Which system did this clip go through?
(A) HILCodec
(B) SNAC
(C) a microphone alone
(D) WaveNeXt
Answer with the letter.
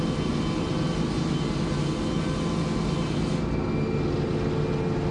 C